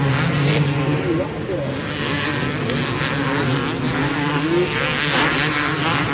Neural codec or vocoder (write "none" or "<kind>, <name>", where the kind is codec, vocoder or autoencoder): none